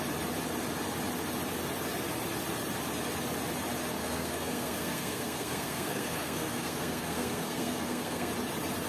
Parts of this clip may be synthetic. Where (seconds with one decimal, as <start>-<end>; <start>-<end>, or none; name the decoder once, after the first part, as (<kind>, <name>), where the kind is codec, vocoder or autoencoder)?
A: 4.0-8.3 (codec, SNAC)